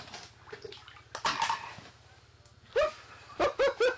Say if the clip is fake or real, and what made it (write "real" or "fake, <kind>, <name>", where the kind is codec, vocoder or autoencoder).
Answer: real